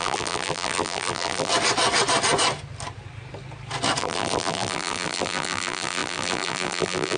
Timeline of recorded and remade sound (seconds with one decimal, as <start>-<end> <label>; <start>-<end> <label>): 0.0-1.5 remade; 1.5-4.0 recorded; 4.0-7.2 remade